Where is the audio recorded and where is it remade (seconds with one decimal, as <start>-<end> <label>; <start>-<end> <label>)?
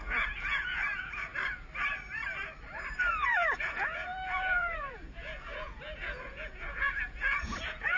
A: 0.0-1.3 remade; 1.3-3.1 recorded; 3.1-8.0 remade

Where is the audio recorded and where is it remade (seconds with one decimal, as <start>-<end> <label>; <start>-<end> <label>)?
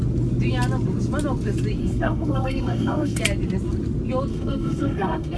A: 0.0-1.8 recorded; 1.8-3.2 remade; 3.2-4.3 recorded; 4.3-5.4 remade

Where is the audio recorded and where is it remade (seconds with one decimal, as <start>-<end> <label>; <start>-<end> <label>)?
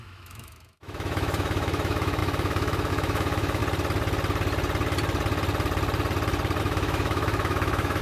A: 0.0-3.6 remade; 3.6-6.6 recorded; 6.6-8.0 remade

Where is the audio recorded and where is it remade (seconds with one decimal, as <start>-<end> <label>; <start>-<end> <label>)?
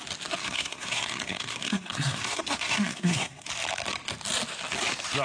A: 0.0-0.4 recorded; 0.4-3.5 remade; 3.5-5.2 recorded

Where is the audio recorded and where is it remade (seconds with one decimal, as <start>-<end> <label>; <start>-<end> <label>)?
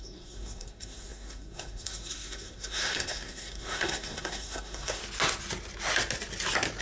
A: 0.0-5.0 remade; 5.0-6.8 recorded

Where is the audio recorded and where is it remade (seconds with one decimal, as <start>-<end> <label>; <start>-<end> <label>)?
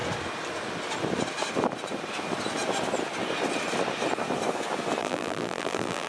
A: 0.0-5.0 recorded; 5.0-6.1 remade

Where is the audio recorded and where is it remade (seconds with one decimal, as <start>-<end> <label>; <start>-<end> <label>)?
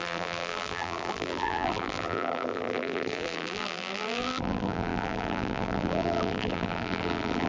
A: 0.0-7.5 remade